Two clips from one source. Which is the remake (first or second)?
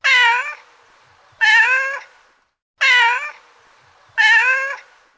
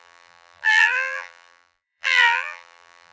second